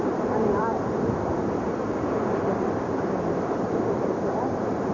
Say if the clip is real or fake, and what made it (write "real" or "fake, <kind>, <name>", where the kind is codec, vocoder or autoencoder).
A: fake, vocoder, BigVGAN v2